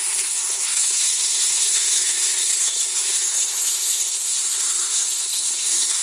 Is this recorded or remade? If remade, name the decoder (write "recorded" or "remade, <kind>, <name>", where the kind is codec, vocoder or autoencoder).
remade, codec, SNAC